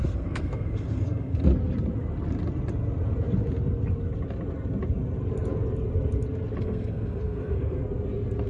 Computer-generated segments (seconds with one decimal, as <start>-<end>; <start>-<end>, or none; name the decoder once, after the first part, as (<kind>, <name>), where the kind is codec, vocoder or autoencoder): 0.0-1.5 (codec, SNAC); 6.6-7.8